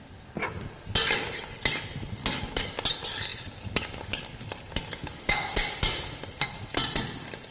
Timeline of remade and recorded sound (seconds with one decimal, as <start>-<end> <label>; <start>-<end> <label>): 0.0-7.5 recorded